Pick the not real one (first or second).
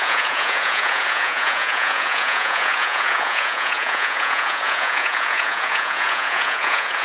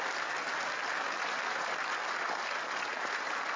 first